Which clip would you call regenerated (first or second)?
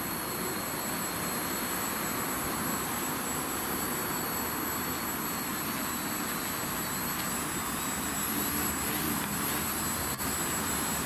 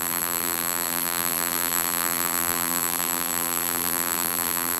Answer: second